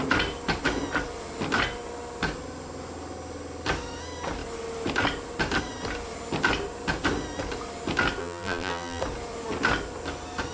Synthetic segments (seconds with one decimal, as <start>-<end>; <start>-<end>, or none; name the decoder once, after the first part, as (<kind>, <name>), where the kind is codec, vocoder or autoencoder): 8.2-9.0 (vocoder, BigVGAN v2)